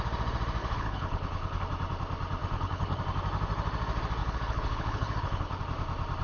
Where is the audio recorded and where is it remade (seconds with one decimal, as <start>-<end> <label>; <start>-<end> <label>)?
0.0-0.6 recorded; 0.6-1.6 remade; 1.6-2.4 recorded; 2.4-3.0 remade; 3.0-4.2 recorded; 4.2-5.6 remade; 5.6-6.2 recorded